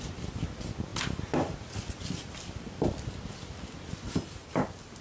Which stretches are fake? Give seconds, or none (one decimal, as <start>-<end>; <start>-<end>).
none